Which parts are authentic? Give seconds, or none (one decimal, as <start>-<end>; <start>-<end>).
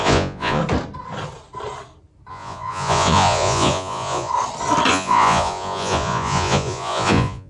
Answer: 0.6-2.3; 4.3-4.9